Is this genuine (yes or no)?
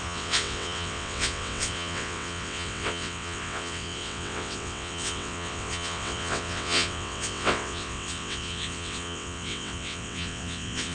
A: no